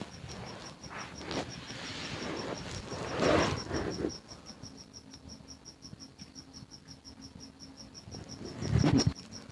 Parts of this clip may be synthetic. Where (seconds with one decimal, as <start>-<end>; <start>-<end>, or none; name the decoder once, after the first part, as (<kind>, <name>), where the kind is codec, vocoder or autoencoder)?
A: none